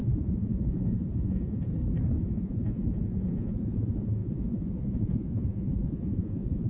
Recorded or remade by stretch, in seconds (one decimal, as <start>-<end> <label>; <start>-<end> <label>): 0.0-1.7 remade; 1.7-2.2 recorded; 2.2-6.7 remade